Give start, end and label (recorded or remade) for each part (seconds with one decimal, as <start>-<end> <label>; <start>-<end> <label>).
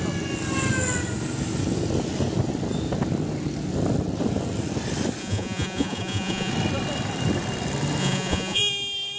0.0-5.2 recorded; 5.2-6.5 remade; 6.5-8.0 recorded; 8.0-8.6 remade; 8.6-9.2 recorded